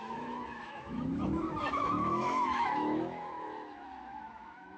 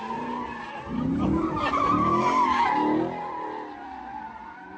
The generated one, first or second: first